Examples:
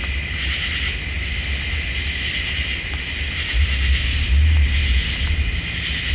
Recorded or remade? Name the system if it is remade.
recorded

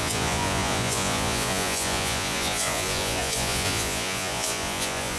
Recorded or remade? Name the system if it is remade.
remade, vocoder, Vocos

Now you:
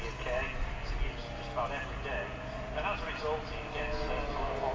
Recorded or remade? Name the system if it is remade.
recorded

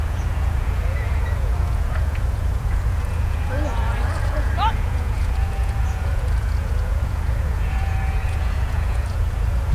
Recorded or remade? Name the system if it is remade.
remade, vocoder, Vocos